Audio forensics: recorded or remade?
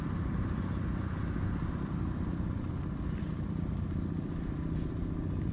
recorded